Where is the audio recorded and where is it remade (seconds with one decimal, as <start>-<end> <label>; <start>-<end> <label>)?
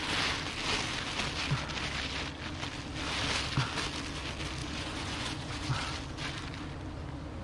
0.0-4.6 recorded; 4.6-5.7 remade; 5.7-7.4 recorded